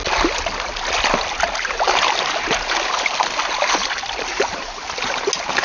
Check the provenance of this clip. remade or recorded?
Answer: recorded